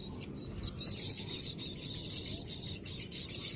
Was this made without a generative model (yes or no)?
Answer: yes